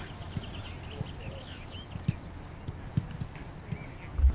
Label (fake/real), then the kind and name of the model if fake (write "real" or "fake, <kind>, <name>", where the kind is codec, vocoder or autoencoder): real